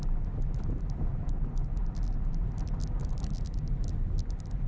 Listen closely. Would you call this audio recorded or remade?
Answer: recorded